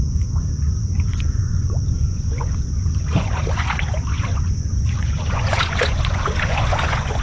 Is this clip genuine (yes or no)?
no